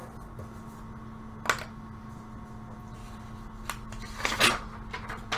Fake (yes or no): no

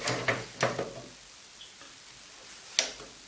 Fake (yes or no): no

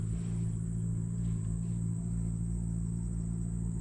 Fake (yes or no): no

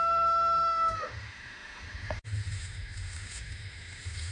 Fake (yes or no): yes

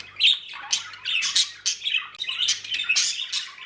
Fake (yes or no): no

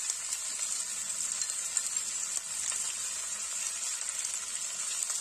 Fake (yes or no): no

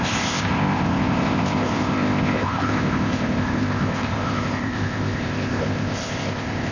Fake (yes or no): yes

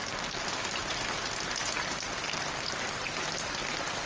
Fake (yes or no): no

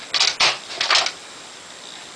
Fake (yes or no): no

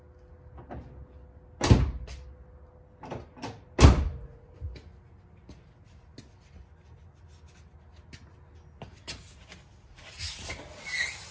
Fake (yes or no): no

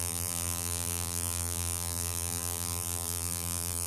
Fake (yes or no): yes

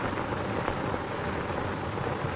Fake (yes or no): no